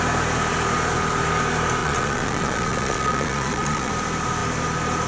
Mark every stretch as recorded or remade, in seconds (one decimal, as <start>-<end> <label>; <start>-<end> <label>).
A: 0.0-1.8 recorded; 1.8-3.9 remade; 3.9-5.1 recorded